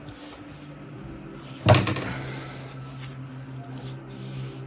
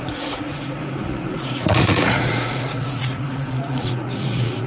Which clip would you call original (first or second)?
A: first